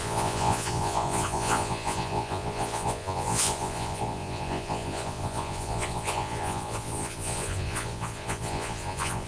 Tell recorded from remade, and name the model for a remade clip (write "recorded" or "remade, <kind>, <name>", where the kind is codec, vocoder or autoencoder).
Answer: remade, vocoder, Vocos